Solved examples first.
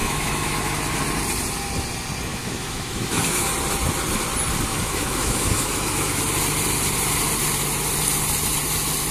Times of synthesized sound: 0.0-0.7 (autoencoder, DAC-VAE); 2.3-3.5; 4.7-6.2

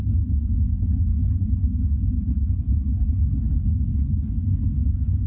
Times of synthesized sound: 1.1-4.3 (codec, HILCodec)

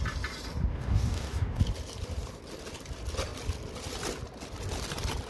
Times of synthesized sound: 0.7-1.6 (codec, DAC)

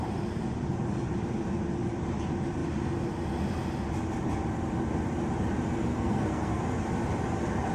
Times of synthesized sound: 5.9-6.6 (codec, SNAC)

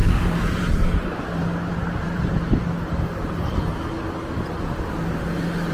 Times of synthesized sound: 0.0-2.6 (vocoder, BigVGAN v2)

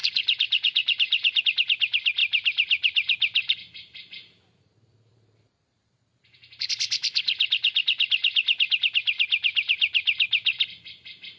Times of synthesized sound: 0.0-1.4 (vocoder, BigVGAN v2); 2.2-6.7

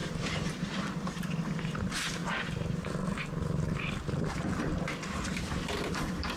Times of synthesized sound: 0.0-2.2 (vocoder, BigVGAN v2); 4.2-6.4

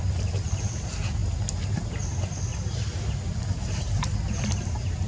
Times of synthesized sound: none